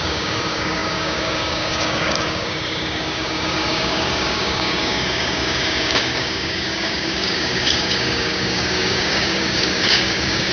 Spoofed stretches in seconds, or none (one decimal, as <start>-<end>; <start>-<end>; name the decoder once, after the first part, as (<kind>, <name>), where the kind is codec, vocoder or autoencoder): 0.0-10.5 (codec, DAC)